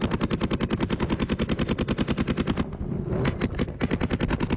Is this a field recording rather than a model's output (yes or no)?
yes